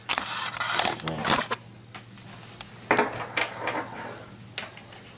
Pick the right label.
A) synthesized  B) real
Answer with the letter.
B